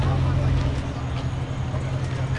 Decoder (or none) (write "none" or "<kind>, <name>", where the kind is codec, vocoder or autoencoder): none